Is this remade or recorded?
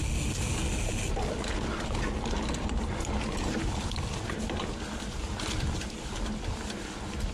recorded